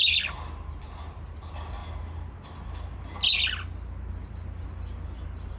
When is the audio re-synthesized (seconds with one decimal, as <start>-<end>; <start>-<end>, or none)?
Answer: none